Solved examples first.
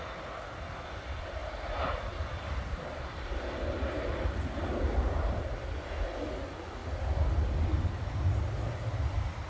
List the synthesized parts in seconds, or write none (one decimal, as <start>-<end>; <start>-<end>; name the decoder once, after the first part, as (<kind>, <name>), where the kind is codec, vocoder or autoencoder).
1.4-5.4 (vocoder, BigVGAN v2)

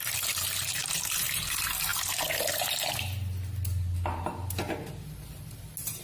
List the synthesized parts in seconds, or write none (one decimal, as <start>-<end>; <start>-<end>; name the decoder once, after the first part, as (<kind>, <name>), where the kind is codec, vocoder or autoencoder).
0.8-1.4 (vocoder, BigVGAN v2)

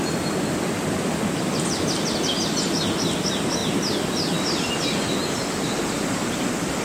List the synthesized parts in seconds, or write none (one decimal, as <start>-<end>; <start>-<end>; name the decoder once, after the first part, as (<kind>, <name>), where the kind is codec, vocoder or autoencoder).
5.2-5.8 (vocoder, BigVGAN v2)

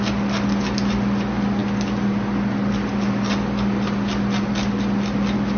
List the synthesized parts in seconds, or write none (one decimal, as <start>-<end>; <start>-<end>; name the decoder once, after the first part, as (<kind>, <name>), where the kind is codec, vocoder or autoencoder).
none

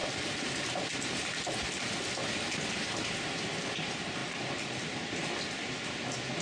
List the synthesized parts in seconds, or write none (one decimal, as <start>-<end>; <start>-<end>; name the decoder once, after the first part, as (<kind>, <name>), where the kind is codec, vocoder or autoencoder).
none